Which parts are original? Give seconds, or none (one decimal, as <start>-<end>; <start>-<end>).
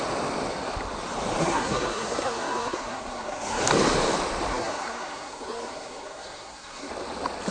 0.0-1.4; 3.6-4.5; 6.9-7.5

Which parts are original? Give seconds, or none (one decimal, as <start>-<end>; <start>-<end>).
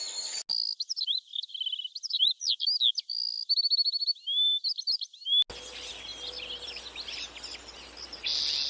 0.0-8.7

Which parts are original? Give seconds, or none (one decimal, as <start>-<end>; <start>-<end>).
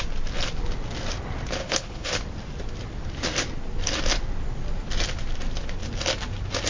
0.0-1.6; 2.1-6.7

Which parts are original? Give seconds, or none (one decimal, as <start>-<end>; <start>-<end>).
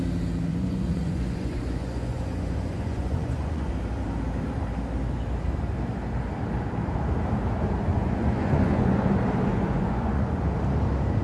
0.0-0.5; 3.7-7.9; 9.1-9.5; 10.4-11.2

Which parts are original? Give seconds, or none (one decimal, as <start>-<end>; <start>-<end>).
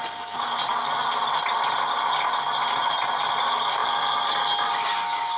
0.0-5.4